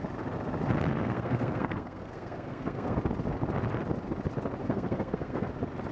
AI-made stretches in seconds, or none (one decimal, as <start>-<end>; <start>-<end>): 0.9-3.0; 4.6-5.5